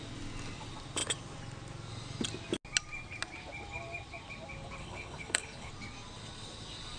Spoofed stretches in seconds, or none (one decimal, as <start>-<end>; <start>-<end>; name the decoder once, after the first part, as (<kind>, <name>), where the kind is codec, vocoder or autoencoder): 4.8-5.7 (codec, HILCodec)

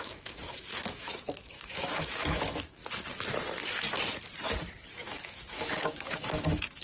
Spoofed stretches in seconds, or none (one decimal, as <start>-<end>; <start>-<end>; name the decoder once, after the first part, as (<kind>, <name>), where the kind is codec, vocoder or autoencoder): 0.0-2.8 (autoencoder, DAC-VAE); 4.9-6.8

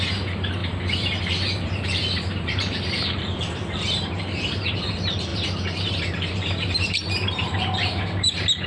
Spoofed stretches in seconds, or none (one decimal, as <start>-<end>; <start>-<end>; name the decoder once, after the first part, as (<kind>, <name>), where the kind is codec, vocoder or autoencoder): 0.0-8.7 (vocoder, BigVGAN v2)

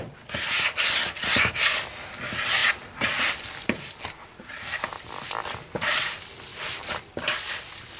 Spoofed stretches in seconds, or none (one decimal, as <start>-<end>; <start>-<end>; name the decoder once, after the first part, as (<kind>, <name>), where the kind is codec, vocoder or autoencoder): 6.5-7.0 (vocoder, BigVGAN v2)